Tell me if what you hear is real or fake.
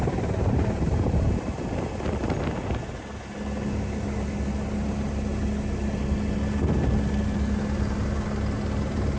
real